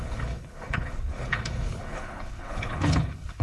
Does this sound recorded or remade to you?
remade